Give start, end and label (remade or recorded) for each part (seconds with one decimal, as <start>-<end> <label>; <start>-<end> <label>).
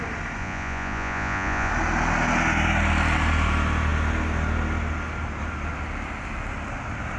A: 0.0-0.4 recorded; 0.4-1.7 remade; 1.7-7.2 recorded